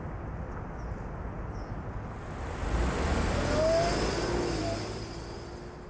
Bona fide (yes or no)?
yes